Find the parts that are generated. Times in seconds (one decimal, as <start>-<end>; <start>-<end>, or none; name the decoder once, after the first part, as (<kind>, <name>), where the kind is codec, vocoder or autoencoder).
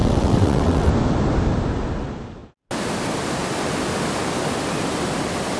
0.0-0.9 (vocoder, WaveNeXt)